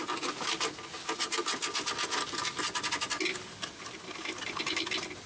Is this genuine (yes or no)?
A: yes